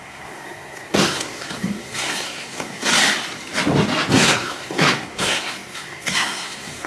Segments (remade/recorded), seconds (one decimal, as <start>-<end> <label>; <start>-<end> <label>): 0.0-2.9 remade; 2.9-4.1 recorded; 4.1-6.9 remade